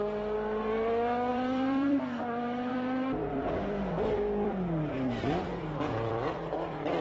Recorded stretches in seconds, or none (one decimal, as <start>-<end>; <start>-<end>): 0.0-1.3; 2.0-2.7